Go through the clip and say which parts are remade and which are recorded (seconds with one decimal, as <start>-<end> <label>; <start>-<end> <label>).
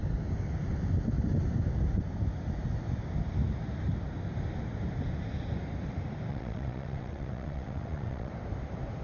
0.0-6.3 recorded; 6.3-8.3 remade; 8.3-9.0 recorded